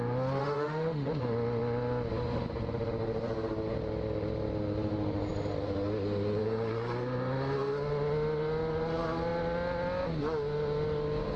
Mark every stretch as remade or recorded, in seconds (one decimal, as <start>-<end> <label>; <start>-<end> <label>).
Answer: 0.0-0.4 recorded; 0.4-1.1 remade; 1.1-11.4 recorded